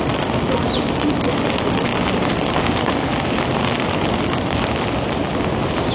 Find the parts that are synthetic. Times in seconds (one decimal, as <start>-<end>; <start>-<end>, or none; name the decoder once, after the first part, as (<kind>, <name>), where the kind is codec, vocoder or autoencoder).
none